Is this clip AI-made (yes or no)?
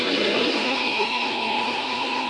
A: yes